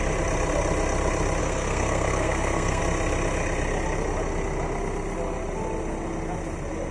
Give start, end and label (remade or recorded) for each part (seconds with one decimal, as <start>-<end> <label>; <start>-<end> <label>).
0.0-1.4 recorded; 1.4-2.8 remade; 2.8-6.9 recorded